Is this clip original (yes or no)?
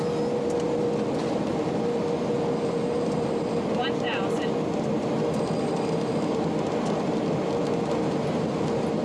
yes